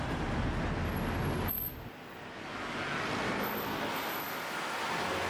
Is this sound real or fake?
real